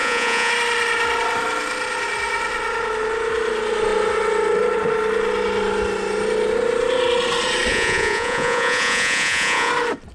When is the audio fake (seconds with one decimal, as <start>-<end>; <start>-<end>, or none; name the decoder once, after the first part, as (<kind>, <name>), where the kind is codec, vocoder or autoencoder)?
0.0-0.5 (vocoder, Vocos); 7.7-9.7